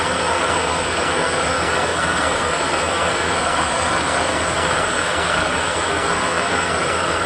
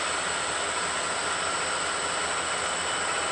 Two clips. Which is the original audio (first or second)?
second